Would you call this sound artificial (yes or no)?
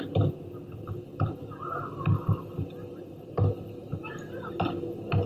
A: no